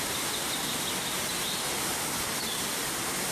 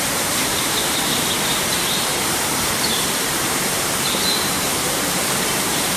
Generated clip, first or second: second